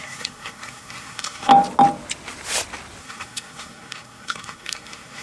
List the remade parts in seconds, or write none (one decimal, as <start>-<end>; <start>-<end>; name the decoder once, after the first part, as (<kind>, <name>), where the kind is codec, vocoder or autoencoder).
0.0-1.5 (codec, SNAC); 3.0-5.2